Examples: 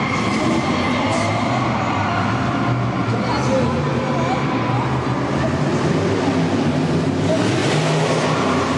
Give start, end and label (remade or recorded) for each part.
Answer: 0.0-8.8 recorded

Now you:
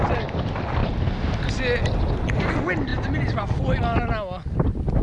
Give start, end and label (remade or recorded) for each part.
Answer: 0.0-5.0 recorded

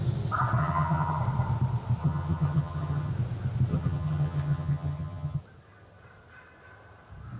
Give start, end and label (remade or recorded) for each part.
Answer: 0.0-0.6 recorded; 0.6-1.2 remade; 1.2-2.0 recorded; 2.0-3.1 remade; 3.1-3.7 recorded; 3.7-5.4 remade; 5.4-7.4 recorded

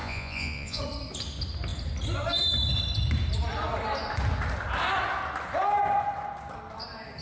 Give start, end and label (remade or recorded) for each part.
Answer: 0.0-0.8 remade; 0.8-7.2 recorded

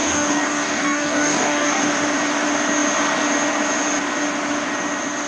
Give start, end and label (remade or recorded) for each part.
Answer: 0.0-1.8 remade; 1.8-5.3 recorded